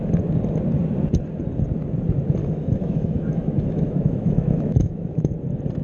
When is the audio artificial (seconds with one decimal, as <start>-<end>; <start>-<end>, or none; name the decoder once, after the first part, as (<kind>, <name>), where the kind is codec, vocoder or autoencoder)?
2.4-5.3 (autoencoder, DAC-VAE)